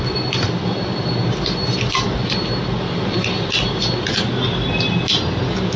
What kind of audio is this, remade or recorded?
recorded